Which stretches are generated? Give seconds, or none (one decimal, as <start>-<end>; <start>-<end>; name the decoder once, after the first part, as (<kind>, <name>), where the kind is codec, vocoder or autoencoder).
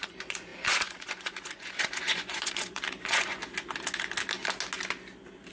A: 0.0-3.4 (vocoder, Vocos)